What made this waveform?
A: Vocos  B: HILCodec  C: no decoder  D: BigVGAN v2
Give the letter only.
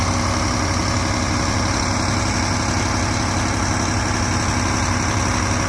C